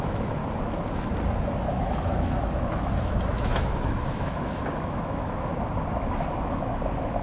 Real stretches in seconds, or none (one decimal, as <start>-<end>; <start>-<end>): 0.4-1.6; 5.5-6.0